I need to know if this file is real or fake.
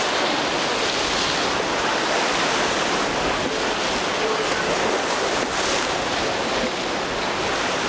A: real